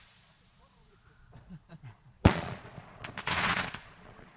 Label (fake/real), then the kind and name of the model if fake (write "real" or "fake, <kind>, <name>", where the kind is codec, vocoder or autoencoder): fake, vocoder, Vocos